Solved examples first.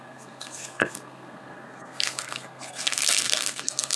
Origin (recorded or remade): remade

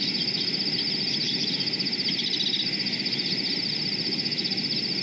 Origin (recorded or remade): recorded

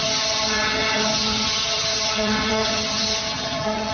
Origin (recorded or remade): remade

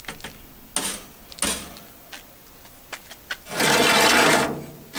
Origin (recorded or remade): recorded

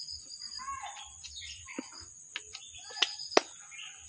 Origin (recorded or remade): recorded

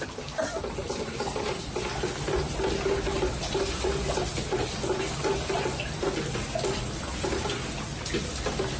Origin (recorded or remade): recorded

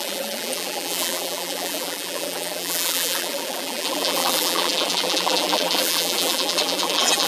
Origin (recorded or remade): remade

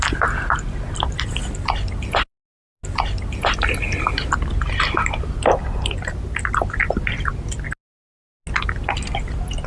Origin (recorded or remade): recorded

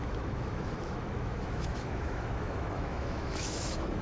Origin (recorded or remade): remade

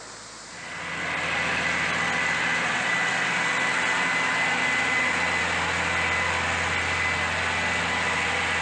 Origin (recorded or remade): recorded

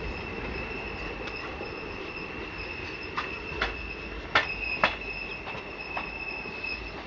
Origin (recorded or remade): recorded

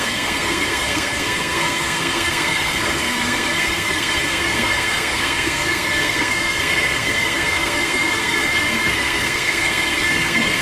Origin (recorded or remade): remade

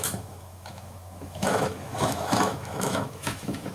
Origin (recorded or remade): remade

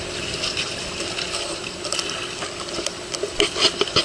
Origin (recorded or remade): recorded